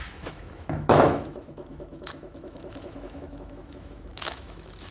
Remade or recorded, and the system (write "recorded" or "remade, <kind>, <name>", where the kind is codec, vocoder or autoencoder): remade, autoencoder, DAC-VAE